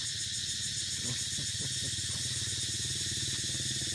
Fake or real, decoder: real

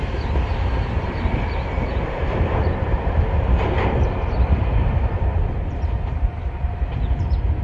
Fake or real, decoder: fake, vocoder, BigVGAN v2